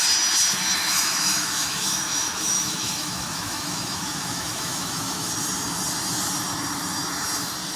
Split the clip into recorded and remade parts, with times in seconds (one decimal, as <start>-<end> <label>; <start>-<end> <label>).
0.0-0.8 recorded; 0.8-5.3 remade; 5.3-7.8 recorded